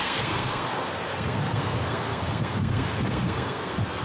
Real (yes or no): no